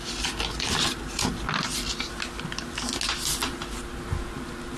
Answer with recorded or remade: recorded